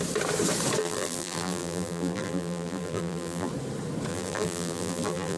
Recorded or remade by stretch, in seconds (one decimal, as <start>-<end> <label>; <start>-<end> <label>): 0.0-0.8 recorded; 0.8-3.5 remade; 3.5-4.1 recorded; 4.1-5.4 remade